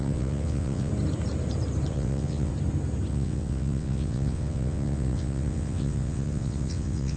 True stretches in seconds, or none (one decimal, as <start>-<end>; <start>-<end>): 0.9-1.9; 2.5-3.1